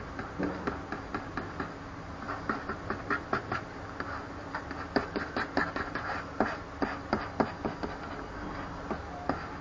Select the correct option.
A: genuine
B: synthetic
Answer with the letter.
A